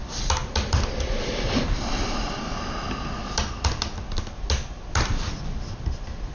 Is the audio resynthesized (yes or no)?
no